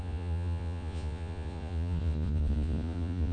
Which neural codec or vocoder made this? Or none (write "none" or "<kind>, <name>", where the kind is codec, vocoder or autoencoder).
vocoder, Vocos